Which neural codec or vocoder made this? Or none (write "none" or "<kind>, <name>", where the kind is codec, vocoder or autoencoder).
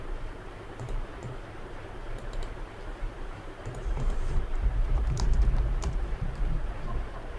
vocoder, BigVGAN v2